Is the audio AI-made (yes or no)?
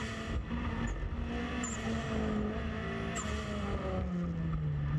no